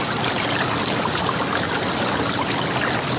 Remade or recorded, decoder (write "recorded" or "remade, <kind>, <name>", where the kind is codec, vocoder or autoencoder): recorded